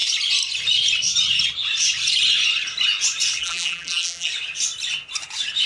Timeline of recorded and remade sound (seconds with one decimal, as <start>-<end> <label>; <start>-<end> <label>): 0.0-3.4 recorded; 3.4-4.3 remade; 4.3-5.7 recorded